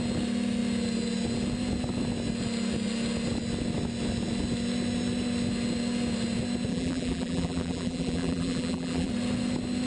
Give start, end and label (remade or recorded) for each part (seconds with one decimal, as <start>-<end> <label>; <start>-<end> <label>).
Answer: 0.0-6.7 recorded; 6.7-9.1 remade; 9.1-9.9 recorded